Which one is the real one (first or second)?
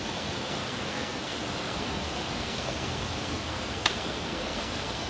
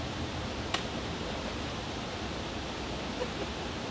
second